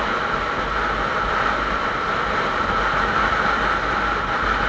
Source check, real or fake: real